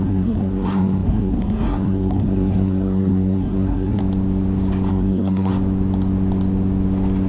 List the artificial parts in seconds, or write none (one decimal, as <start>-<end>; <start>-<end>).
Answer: 0.0-4.0; 4.9-5.5